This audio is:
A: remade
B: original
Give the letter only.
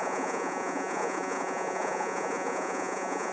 A